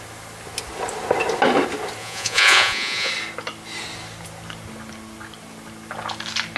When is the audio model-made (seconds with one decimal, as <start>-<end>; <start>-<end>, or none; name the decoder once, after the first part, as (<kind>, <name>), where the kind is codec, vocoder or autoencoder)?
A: 2.0-3.1 (vocoder, Vocos)

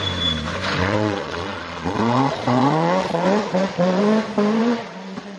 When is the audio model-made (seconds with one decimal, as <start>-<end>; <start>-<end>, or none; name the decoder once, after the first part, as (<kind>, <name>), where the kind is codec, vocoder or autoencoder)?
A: 0.8-4.0 (vocoder, Vocos); 4.6-5.4

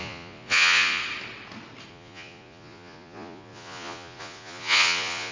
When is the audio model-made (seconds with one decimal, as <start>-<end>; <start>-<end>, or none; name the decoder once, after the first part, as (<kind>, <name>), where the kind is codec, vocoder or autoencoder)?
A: 0.0-1.0 (vocoder, Vocos); 1.9-5.3

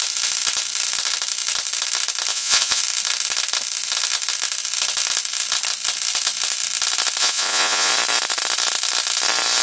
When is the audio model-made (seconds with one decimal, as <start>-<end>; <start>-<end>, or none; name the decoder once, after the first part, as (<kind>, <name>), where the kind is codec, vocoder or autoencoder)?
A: 2.3-2.8 (vocoder, Vocos); 7.2-7.9

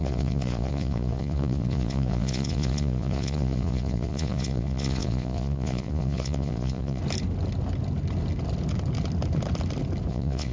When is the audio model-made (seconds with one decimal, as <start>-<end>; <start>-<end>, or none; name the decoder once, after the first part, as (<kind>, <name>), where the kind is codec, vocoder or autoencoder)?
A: 0.0-7.0 (vocoder, Vocos); 10.1-10.5

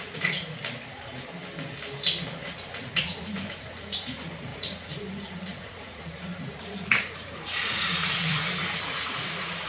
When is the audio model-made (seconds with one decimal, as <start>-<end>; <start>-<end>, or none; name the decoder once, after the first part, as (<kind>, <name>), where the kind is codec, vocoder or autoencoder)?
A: 0.0-0.6 (vocoder, Vocos); 2.3-9.7

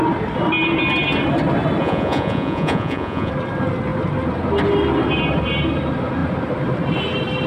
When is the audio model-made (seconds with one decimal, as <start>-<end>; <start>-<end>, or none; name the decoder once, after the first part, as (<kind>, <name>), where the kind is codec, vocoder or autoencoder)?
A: 1.8-3.3 (vocoder, Vocos)